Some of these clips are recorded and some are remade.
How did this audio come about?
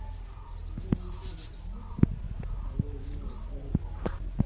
recorded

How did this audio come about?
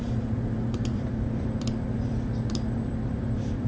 remade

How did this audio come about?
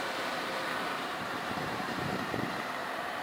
remade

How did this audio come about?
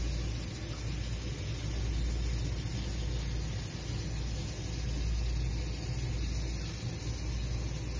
recorded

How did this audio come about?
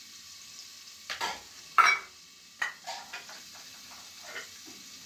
remade